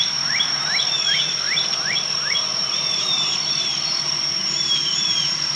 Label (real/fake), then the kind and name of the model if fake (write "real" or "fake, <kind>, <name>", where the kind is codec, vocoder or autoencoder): fake, vocoder, BigVGAN v2